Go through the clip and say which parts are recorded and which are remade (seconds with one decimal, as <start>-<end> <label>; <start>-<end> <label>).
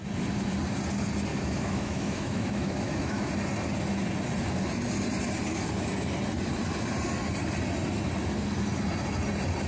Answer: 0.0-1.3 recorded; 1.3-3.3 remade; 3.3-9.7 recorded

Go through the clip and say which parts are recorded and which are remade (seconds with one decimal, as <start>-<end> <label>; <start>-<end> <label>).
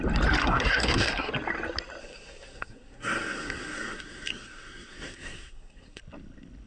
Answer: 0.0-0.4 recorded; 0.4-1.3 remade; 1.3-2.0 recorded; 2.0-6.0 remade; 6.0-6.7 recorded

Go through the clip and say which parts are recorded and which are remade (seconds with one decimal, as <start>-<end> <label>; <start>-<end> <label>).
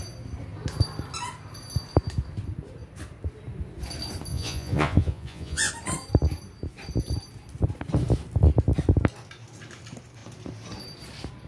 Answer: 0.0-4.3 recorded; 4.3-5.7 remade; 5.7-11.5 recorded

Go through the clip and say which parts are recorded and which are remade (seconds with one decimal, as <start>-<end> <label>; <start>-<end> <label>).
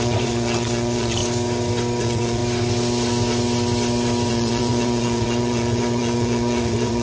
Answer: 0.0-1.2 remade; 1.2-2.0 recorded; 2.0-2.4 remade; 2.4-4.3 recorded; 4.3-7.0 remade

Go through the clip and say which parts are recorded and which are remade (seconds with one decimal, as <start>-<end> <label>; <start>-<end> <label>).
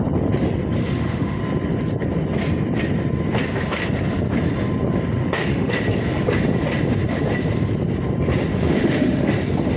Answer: 0.0-0.8 recorded; 0.8-1.4 remade; 1.4-5.2 recorded; 5.2-5.7 remade; 5.7-8.5 recorded; 8.5-9.3 remade; 9.3-9.8 recorded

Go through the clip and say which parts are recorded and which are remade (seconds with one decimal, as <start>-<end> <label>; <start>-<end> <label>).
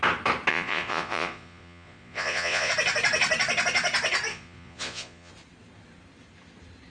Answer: 0.0-0.5 recorded; 0.5-2.7 remade; 2.7-4.3 recorded; 4.3-5.3 remade; 5.3-6.9 recorded